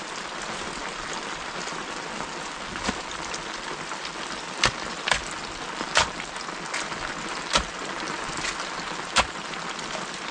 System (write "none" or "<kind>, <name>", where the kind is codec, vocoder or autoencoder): none